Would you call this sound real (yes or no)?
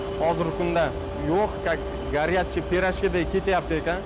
yes